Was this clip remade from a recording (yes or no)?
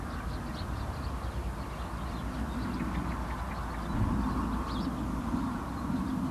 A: no